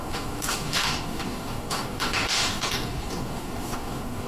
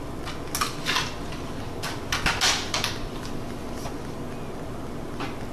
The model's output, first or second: first